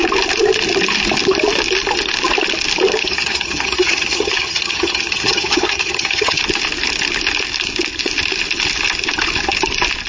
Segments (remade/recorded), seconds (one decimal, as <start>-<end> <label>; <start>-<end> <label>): 0.0-3.0 recorded; 3.0-6.4 remade; 6.4-10.1 recorded